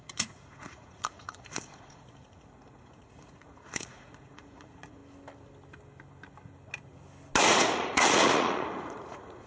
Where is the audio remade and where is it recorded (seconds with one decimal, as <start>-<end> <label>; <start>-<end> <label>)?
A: 0.0-5.0 remade; 5.0-7.4 recorded; 7.4-9.5 remade